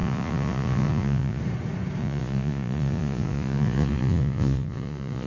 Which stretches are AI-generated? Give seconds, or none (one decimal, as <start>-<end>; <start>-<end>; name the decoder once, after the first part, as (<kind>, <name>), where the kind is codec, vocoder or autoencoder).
0.0-1.4 (vocoder, Vocos); 2.0-5.3